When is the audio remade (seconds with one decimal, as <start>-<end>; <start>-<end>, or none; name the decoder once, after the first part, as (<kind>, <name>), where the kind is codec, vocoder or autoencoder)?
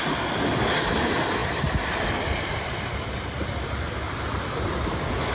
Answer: 1.4-4.6 (vocoder, BigVGAN v2)